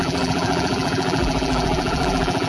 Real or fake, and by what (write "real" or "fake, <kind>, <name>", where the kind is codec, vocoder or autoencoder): fake, vocoder, BigVGAN v2